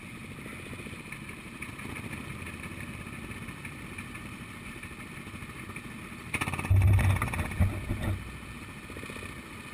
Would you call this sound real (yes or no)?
yes